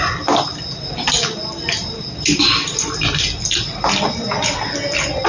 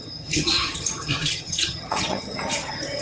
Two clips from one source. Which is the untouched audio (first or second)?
first